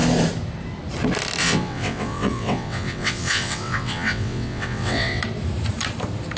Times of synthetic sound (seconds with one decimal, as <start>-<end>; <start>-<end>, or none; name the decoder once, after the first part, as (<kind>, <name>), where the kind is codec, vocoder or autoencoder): 1.4-5.2 (vocoder, WaveNeXt)